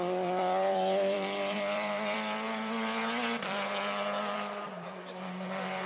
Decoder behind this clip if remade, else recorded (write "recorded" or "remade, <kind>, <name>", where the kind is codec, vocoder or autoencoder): remade, vocoder, BigVGAN v2